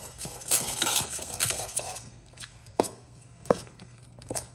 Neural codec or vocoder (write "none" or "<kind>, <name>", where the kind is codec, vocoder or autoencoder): codec, SNAC